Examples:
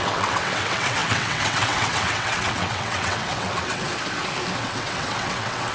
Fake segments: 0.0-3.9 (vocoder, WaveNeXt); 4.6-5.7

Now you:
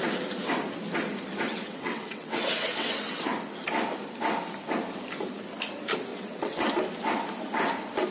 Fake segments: 1.5-3.2 (vocoder, WaveNeXt); 6.1-6.8

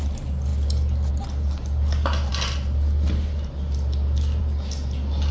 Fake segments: none

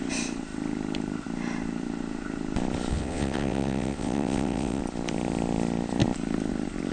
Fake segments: 2.9-4.8 (vocoder, WaveNeXt)

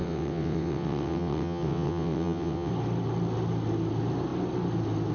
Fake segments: 0.0-2.7 (vocoder, WaveNeXt)